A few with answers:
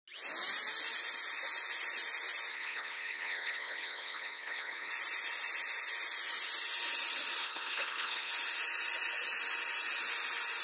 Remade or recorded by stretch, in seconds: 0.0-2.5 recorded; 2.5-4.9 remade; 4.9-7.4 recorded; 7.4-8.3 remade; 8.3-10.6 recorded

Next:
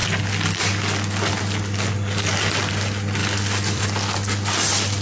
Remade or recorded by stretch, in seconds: 0.0-3.2 recorded; 3.2-3.8 remade; 3.8-5.0 recorded

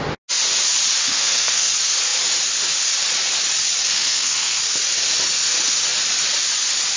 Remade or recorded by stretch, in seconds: 0.0-1.0 recorded; 1.0-1.7 remade; 1.7-3.9 recorded; 3.9-4.6 remade; 4.6-7.0 recorded

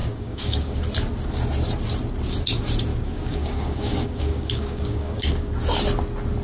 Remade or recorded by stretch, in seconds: 0.0-0.8 remade; 0.8-2.9 recorded; 2.9-5.5 remade; 5.5-6.4 recorded